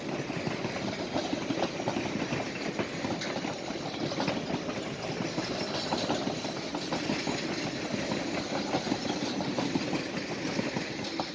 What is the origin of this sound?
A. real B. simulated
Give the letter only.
A